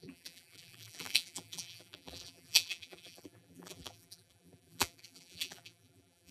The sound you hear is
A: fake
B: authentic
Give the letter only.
A